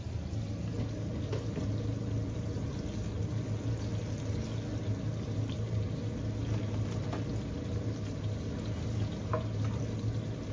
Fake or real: real